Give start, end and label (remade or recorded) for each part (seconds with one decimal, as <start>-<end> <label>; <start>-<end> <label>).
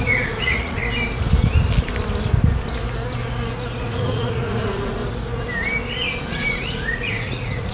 0.0-0.8 remade; 0.8-3.8 recorded; 3.8-5.0 remade; 5.0-6.3 recorded; 6.3-7.7 remade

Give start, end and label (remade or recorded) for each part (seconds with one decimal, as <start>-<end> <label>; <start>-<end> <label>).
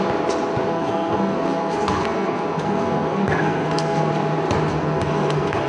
0.0-0.7 recorded; 0.7-4.1 remade; 4.1-4.7 recorded; 4.7-5.7 remade